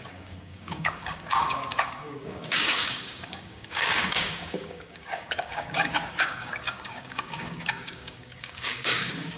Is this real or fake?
fake